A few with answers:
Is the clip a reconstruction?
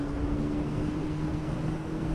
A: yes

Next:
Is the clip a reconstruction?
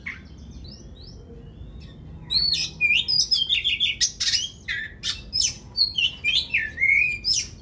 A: no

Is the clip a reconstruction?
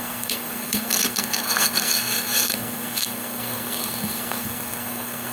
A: yes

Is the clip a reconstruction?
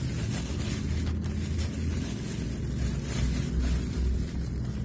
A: no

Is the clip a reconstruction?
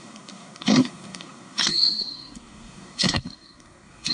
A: yes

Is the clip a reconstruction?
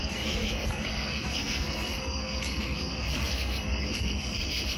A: yes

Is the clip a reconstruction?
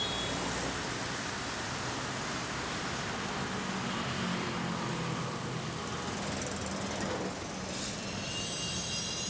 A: no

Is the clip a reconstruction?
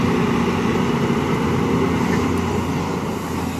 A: no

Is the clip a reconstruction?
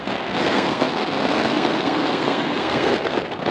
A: yes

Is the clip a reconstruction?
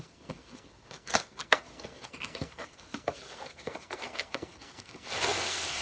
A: yes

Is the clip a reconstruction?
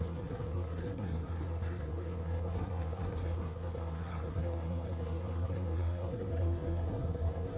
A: yes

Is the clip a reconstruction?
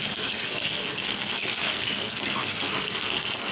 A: yes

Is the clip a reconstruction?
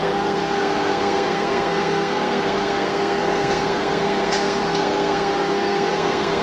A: yes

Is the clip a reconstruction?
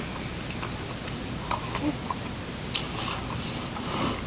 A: no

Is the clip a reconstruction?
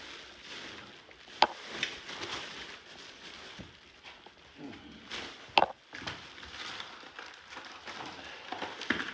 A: no